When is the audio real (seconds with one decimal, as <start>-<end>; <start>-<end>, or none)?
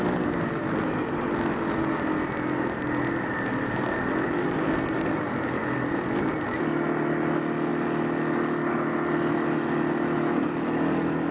0.0-11.3